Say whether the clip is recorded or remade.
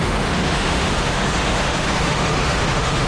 remade